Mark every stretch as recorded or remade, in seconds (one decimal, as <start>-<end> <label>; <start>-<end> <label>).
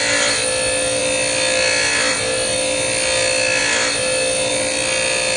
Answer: 0.0-5.4 recorded